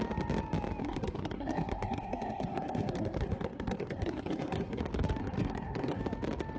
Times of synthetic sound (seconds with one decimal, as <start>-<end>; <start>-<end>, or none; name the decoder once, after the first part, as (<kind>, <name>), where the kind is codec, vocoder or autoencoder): 0.8-4.8 (codec, SNAC); 5.2-6.0